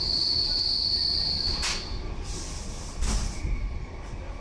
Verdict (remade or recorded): recorded